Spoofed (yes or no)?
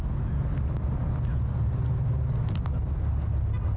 no